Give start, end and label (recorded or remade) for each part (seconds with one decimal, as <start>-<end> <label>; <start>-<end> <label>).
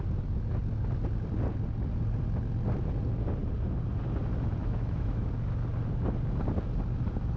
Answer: 0.0-4.6 recorded; 4.6-5.3 remade; 5.3-7.4 recorded